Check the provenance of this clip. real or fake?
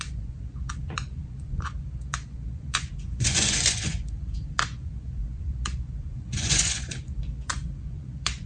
fake